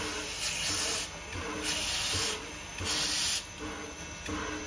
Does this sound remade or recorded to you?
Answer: recorded